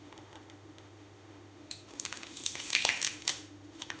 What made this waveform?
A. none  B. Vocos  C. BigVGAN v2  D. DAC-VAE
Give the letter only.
D